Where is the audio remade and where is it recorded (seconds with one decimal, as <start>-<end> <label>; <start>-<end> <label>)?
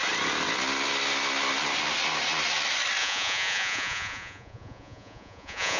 0.0-3.0 recorded; 3.0-5.8 remade